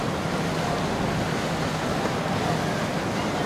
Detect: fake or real real